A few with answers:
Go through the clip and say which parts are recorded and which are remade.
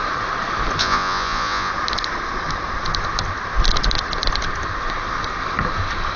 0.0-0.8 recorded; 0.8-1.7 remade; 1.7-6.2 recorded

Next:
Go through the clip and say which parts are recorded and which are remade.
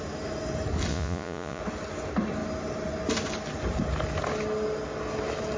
0.0-0.9 recorded; 0.9-1.6 remade; 1.6-5.6 recorded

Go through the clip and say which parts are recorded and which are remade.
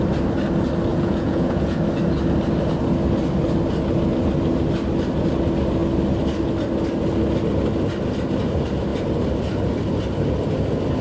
0.0-0.9 recorded; 0.9-1.8 remade; 1.8-11.0 recorded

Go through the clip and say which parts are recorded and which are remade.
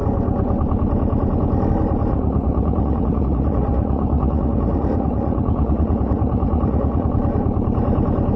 0.0-2.1 recorded; 2.1-7.1 remade; 7.1-8.4 recorded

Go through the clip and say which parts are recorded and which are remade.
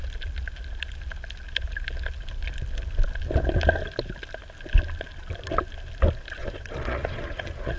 0.0-6.4 recorded; 6.4-7.8 remade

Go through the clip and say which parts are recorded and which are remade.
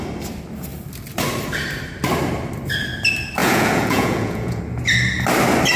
0.0-3.4 recorded; 3.4-4.6 remade; 4.6-5.8 recorded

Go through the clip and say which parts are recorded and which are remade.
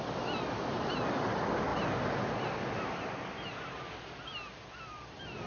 0.0-5.5 recorded